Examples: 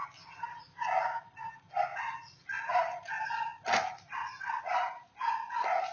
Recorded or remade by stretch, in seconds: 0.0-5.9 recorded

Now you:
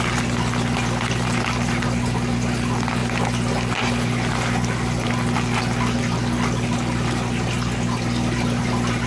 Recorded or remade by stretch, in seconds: 0.0-9.1 recorded

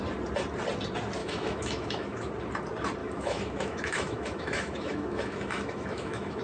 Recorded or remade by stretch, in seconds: 0.0-1.2 recorded; 1.2-2.3 remade; 2.3-3.0 recorded; 3.0-6.4 remade

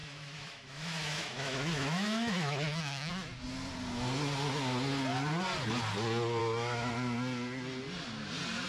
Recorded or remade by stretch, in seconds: 0.0-3.1 remade; 3.1-6.4 recorded; 6.4-6.9 remade; 6.9-8.7 recorded

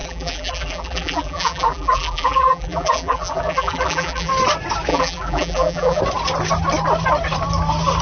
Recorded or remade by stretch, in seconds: 0.0-4.3 remade; 4.3-4.9 recorded; 4.9-6.0 remade; 6.0-8.0 recorded

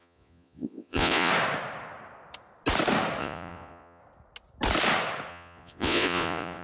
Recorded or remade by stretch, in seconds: 0.0-1.3 remade; 1.3-3.2 recorded; 3.2-4.0 remade; 4.0-5.3 recorded; 5.3-6.6 remade

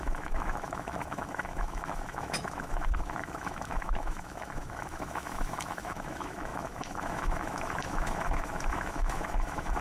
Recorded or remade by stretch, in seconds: 0.0-9.8 remade

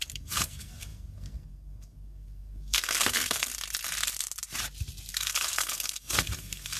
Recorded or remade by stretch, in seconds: 0.0-3.5 remade; 3.5-5.1 recorded; 5.1-6.8 remade